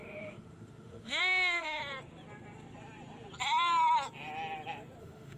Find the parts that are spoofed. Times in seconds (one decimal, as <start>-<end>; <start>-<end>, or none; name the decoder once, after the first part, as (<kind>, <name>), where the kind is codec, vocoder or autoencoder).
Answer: 0.0-1.8 (autoencoder, DAC-VAE); 5.0-5.4